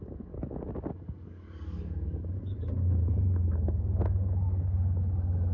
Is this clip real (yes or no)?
no